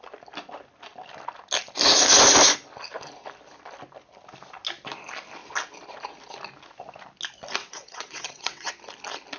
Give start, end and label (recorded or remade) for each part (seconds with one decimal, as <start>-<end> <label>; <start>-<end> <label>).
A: 0.0-7.6 recorded; 7.6-8.7 remade; 8.7-9.4 recorded